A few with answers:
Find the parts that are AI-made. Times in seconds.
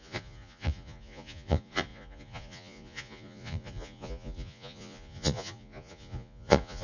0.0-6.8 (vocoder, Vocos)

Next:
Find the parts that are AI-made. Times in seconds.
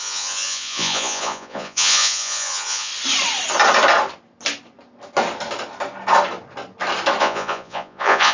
0.0-2.9 (vocoder, Vocos); 7.2-8.3